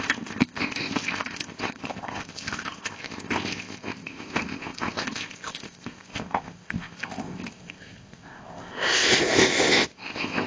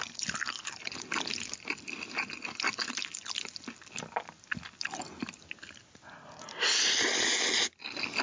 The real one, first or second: second